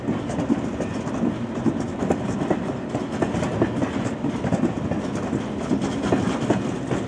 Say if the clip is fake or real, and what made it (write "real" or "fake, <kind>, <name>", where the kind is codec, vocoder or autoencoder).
real